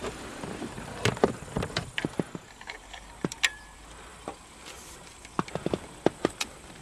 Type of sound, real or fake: fake